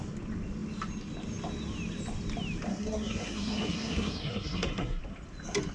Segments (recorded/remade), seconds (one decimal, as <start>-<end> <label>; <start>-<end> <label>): 0.0-2.7 recorded; 2.7-5.0 remade; 5.0-5.7 recorded